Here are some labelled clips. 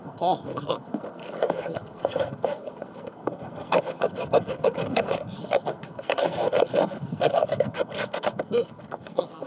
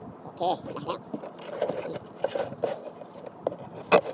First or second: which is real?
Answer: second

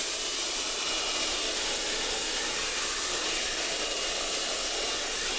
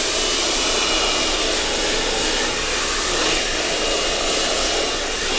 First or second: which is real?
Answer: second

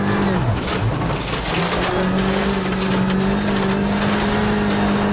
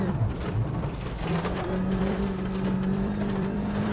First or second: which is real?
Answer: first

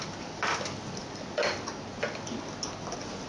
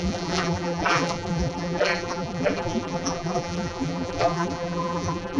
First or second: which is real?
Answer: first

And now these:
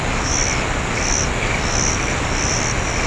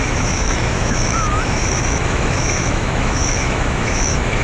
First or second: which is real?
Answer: first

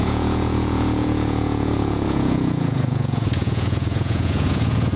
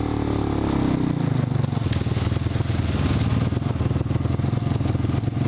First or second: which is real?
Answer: second